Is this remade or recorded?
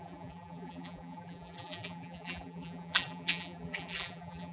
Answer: remade